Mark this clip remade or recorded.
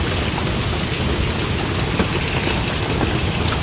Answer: recorded